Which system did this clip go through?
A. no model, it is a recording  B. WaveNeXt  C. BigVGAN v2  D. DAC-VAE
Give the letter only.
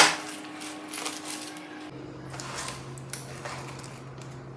A